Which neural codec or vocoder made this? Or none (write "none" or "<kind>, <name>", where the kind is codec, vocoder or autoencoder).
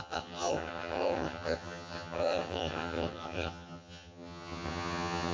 vocoder, HiFi-GAN